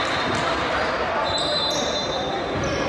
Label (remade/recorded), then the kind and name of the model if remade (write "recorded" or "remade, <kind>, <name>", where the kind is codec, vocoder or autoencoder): remade, vocoder, BigVGAN v2